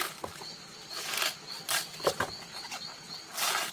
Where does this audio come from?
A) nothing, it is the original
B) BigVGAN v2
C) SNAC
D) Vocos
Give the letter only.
A